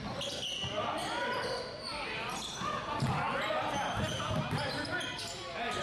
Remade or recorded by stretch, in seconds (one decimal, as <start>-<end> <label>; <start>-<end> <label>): 0.0-5.8 recorded

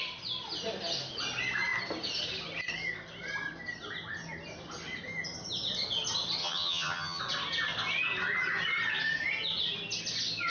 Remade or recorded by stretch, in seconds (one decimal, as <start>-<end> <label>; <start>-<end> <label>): 0.0-6.4 recorded; 6.4-7.2 remade; 7.2-10.5 recorded

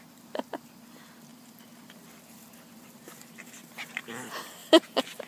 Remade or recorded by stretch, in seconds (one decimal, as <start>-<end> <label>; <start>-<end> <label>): 0.0-5.3 recorded

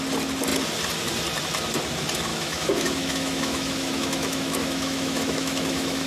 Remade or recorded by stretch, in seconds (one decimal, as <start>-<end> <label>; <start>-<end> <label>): 0.0-2.3 recorded; 2.3-6.1 remade